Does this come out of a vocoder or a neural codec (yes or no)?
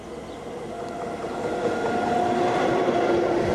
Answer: no